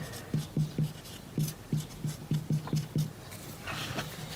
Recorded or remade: recorded